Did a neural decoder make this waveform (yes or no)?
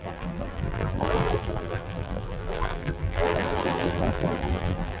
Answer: yes